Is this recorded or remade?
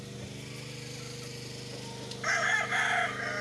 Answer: recorded